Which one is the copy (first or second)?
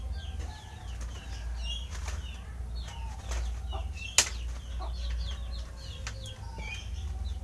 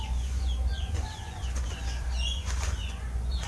second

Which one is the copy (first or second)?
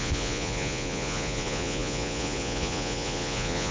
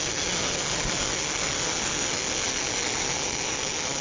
first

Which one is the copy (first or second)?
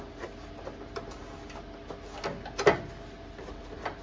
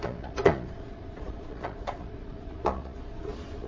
second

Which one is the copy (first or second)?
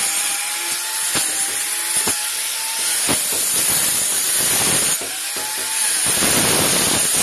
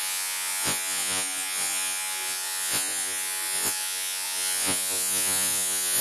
second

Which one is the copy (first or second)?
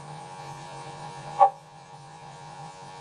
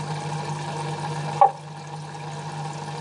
first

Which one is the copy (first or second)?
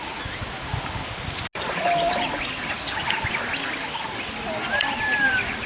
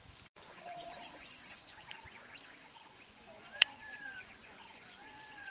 second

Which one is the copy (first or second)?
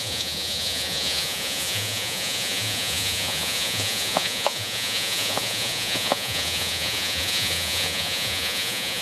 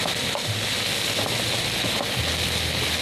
first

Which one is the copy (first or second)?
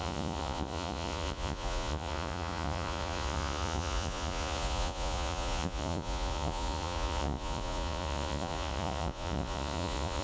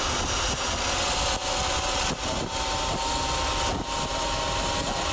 first